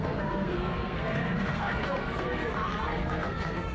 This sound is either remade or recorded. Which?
remade